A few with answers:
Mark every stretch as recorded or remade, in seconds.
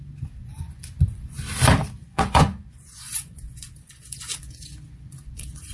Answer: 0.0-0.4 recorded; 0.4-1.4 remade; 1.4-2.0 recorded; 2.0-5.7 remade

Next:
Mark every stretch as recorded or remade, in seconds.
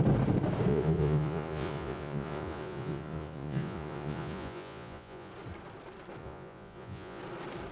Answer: 0.0-0.7 recorded; 0.7-5.3 remade; 5.3-6.2 recorded; 6.2-7.2 remade; 7.2-7.7 recorded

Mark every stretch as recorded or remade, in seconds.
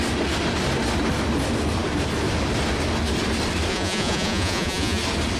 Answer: 0.0-3.7 recorded; 3.7-5.0 remade; 5.0-5.4 recorded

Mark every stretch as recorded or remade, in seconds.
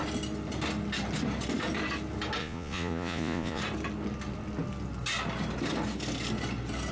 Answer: 0.0-2.4 recorded; 2.4-3.6 remade; 3.6-6.9 recorded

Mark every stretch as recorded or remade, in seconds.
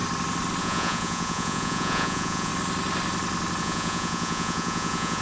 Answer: 0.0-0.6 recorded; 0.6-2.5 remade; 2.5-3.6 recorded; 3.6-5.2 remade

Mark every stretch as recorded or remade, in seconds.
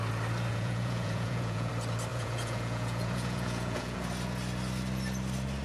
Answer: 0.0-0.5 recorded; 0.5-1.7 remade; 1.7-2.1 recorded; 2.1-4.0 remade; 4.0-5.6 recorded